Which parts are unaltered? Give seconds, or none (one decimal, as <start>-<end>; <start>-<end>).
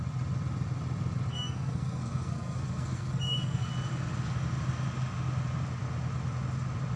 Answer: 0.0-1.3; 3.7-7.0